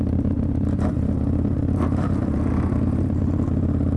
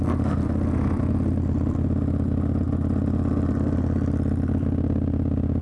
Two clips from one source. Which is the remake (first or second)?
first